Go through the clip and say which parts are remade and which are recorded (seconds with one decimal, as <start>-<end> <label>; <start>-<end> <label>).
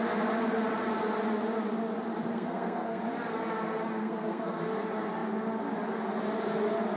0.0-2.3 recorded; 2.3-3.0 remade; 3.0-4.0 recorded; 4.0-4.6 remade; 4.6-7.0 recorded